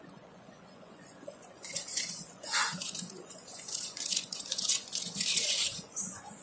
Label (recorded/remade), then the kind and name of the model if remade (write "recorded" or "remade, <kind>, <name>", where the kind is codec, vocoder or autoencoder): remade, vocoder, Vocos